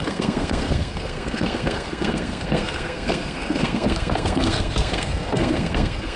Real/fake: fake